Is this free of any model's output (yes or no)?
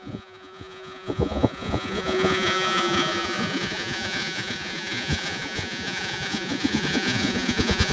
no